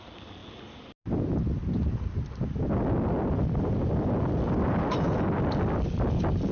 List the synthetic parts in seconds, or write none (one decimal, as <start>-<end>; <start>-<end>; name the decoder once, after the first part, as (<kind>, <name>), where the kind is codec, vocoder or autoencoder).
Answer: none